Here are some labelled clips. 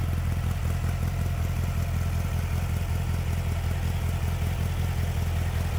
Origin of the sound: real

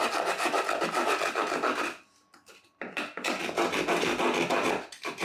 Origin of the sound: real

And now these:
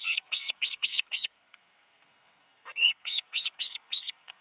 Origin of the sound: fake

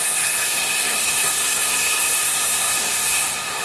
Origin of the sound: fake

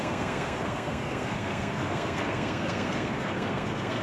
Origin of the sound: fake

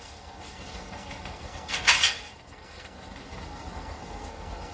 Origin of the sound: fake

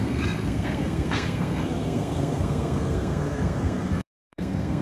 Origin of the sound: fake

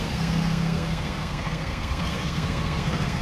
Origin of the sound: fake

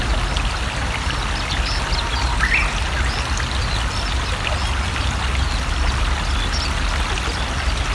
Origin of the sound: real